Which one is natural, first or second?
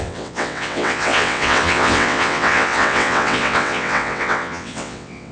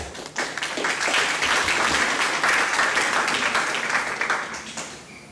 second